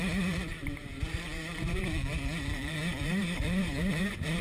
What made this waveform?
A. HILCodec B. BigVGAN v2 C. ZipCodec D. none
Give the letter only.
B